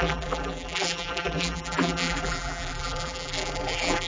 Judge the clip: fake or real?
fake